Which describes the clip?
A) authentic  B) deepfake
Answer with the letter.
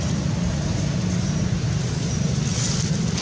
A